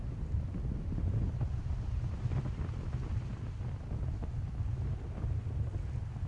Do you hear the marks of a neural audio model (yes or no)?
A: no